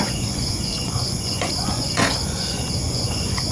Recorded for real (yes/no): no